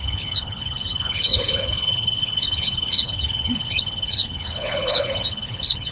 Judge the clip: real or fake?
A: fake